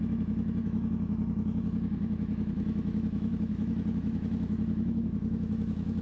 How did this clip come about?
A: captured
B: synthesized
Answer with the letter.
B